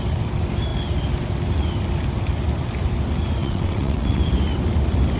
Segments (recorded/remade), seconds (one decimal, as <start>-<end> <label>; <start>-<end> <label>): 0.0-3.4 recorded; 3.4-4.2 remade; 4.2-5.2 recorded